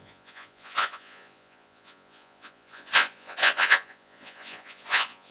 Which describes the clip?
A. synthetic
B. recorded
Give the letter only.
A